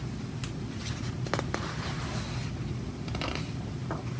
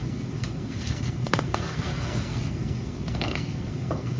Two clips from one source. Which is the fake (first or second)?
second